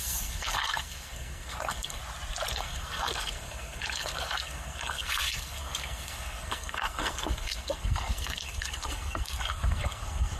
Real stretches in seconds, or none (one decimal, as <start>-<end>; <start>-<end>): 2.0-2.5